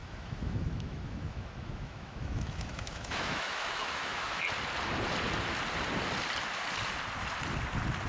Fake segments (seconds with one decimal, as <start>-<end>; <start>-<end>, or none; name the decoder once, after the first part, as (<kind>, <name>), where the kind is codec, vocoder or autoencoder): 0.0-4.4 (autoencoder, DAC-VAE)